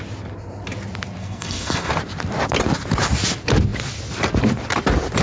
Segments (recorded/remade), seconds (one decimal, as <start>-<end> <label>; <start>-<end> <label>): 0.0-1.2 recorded; 1.2-1.9 remade; 1.9-5.2 recorded